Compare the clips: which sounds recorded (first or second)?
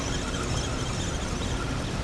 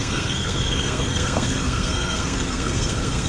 first